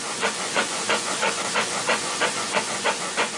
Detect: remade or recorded remade